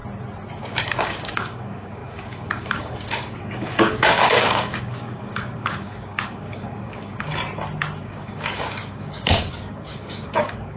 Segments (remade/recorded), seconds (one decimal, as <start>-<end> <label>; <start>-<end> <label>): 0.0-0.6 recorded; 0.6-7.3 remade; 7.3-8.0 recorded; 8.0-10.8 remade